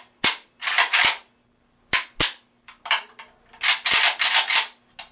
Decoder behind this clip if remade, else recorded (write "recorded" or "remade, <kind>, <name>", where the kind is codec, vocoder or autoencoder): recorded